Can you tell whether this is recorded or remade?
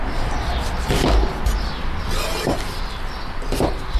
recorded